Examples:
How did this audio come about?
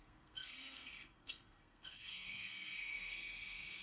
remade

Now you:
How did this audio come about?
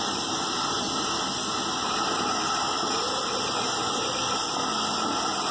recorded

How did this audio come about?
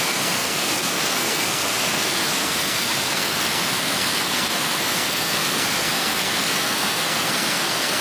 remade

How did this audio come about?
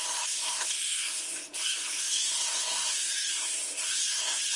remade